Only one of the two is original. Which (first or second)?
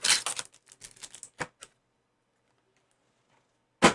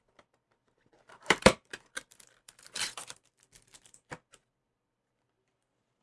first